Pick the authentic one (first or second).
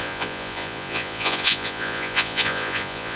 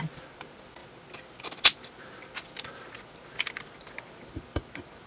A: second